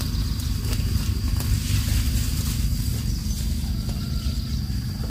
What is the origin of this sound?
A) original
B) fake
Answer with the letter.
A